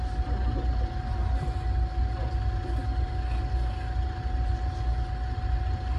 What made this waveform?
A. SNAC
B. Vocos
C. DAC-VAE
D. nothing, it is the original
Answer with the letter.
D